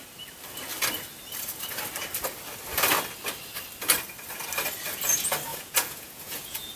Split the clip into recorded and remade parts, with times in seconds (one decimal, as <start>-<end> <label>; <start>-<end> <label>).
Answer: 0.0-5.5 recorded; 5.5-6.8 remade